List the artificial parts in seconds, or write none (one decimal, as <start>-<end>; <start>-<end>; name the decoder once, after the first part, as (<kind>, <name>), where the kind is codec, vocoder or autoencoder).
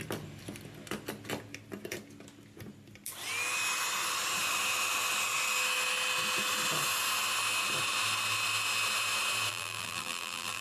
9.5-10.6 (vocoder, BigVGAN v2)